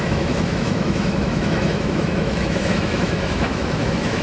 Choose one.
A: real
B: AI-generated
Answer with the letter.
B